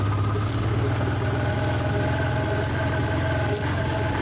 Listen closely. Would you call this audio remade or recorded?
recorded